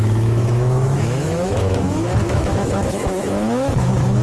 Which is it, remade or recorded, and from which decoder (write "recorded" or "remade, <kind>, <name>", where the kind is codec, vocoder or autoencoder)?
remade, autoencoder, DAC-VAE